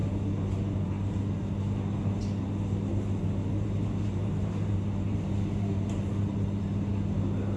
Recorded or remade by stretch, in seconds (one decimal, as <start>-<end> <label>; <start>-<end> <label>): 0.0-2.2 remade; 2.2-2.9 recorded; 2.9-6.9 remade; 6.9-7.6 recorded